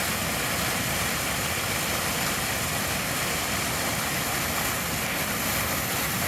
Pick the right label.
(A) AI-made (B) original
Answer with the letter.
B